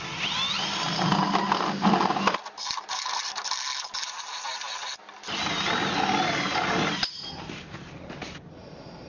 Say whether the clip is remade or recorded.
recorded